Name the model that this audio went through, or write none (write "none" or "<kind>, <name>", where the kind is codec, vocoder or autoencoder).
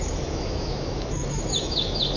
autoencoder, DAC-VAE